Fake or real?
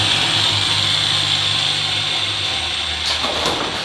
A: real